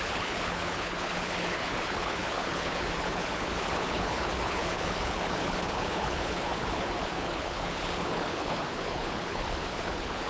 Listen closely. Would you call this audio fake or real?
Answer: fake